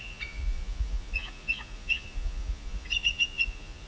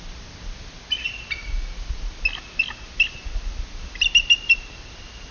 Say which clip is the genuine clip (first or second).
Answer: second